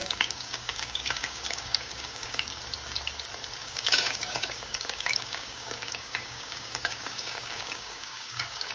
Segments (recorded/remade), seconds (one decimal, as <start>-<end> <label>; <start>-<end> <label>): 0.0-2.6 remade; 2.6-3.6 recorded; 3.6-8.7 remade